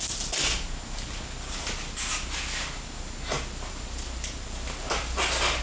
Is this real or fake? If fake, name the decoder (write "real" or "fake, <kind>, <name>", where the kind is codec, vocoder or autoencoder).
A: real